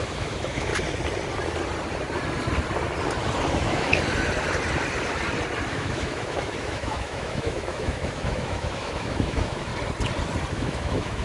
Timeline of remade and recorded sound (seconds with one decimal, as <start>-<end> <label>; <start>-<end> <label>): 0.0-0.7 remade; 0.7-3.5 recorded; 3.5-3.9 remade; 3.9-5.7 recorded; 5.7-9.7 remade; 9.7-10.5 recorded; 10.5-11.2 remade